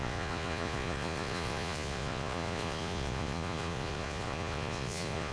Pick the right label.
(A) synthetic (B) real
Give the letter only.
A